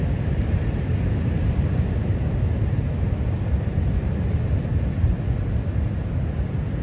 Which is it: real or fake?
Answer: real